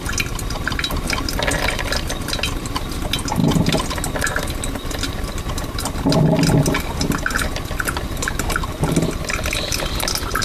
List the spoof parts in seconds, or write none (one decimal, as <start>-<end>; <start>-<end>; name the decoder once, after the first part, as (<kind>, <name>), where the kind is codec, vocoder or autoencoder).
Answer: none